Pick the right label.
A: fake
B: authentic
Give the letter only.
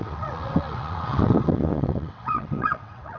A